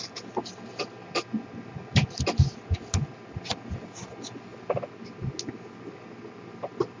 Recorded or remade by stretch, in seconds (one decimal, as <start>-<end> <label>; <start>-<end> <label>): 0.0-7.0 recorded